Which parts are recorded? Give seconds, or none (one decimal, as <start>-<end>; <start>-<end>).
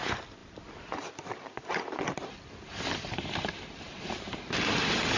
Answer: 0.0-5.2